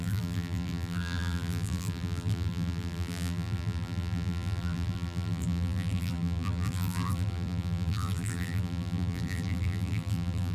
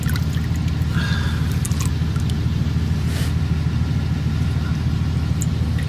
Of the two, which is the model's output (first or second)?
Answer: first